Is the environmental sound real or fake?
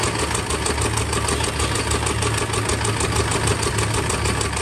real